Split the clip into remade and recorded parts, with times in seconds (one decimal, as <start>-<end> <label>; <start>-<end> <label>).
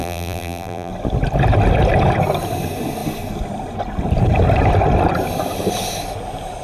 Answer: 0.0-0.9 remade; 0.9-6.6 recorded